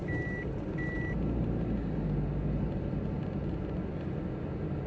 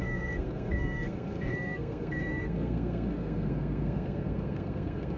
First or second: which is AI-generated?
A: second